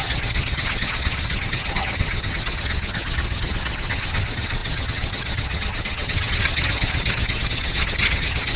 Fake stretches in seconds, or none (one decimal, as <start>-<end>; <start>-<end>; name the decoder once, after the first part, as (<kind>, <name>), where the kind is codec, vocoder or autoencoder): 0.0-8.6 (vocoder, HiFi-GAN)